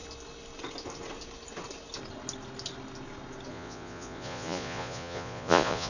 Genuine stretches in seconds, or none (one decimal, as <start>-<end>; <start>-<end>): 0.0-3.5

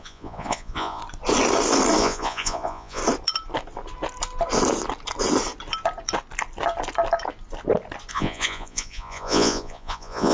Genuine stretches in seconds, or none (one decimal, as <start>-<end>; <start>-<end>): 1.0-2.0; 3.0-8.1

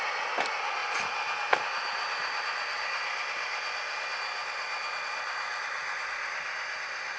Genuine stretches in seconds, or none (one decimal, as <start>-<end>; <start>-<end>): 0.0-7.2

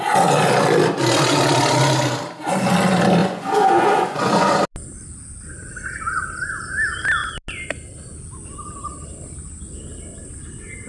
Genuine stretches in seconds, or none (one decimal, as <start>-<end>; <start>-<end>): 0.0-3.2; 4.5-10.9

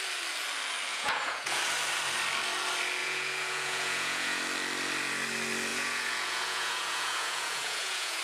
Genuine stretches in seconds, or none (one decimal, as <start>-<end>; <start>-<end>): 0.0-0.9; 1.6-3.0; 4.4-5.7

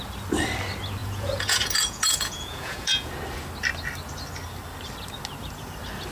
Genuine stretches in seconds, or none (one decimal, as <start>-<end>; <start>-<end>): 0.0-1.0; 3.1-6.1

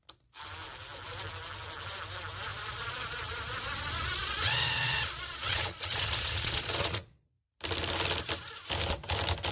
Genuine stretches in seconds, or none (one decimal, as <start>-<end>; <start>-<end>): 0.0-2.5; 7.4-9.5

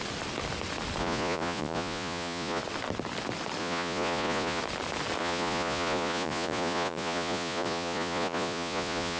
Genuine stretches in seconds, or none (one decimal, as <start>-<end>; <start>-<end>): 0.0-1.0; 2.6-3.6; 4.6-5.2